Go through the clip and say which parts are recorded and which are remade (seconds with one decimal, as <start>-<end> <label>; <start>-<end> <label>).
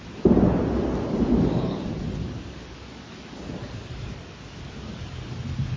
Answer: 0.0-1.3 recorded; 1.3-1.8 remade; 1.8-2.2 recorded; 2.2-5.3 remade; 5.3-5.8 recorded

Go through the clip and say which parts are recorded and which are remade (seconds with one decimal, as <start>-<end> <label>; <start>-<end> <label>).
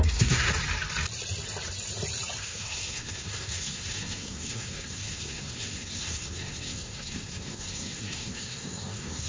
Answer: 0.0-0.5 remade; 0.5-2.4 recorded; 2.4-9.3 remade